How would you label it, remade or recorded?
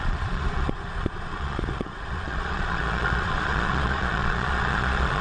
remade